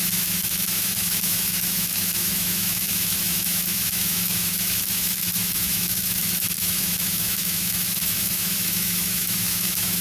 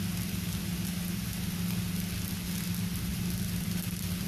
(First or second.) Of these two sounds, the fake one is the first